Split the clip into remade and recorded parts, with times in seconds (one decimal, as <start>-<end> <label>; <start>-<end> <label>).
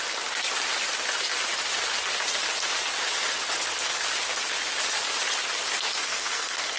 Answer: 0.0-6.0 recorded; 6.0-6.8 remade